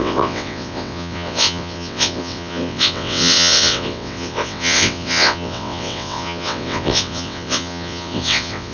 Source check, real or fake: fake